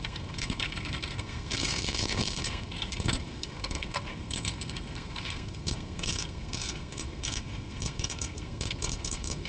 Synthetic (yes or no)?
yes